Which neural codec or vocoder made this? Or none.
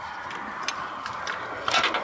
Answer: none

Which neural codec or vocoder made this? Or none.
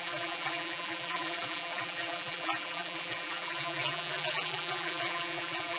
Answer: vocoder, BigVGAN v2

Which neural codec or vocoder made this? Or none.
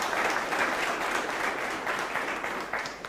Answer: none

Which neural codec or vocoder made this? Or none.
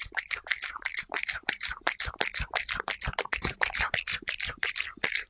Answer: vocoder, BigVGAN v2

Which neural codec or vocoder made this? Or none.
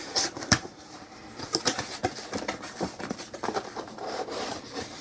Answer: vocoder, BigVGAN v2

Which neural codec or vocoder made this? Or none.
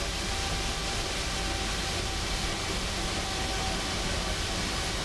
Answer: none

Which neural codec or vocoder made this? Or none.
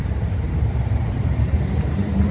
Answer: vocoder, BigVGAN v2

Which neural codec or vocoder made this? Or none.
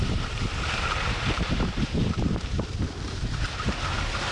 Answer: vocoder, BigVGAN v2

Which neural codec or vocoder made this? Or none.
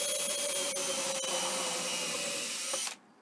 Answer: vocoder, BigVGAN v2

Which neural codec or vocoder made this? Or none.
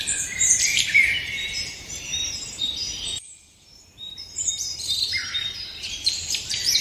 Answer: vocoder, BigVGAN v2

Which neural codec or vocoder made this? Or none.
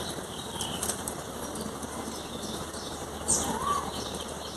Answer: vocoder, BigVGAN v2